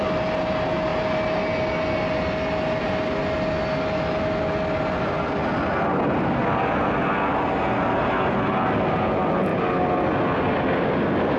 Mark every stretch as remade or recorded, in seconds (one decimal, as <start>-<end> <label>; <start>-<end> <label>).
0.0-11.4 recorded